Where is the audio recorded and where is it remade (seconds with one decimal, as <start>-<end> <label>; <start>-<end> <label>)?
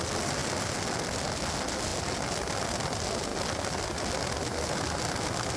0.0-5.6 recorded